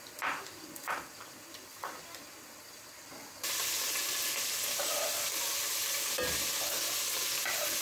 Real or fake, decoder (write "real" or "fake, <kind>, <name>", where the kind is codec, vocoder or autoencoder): real